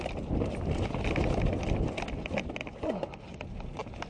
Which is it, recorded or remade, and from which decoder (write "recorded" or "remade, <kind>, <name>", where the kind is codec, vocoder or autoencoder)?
recorded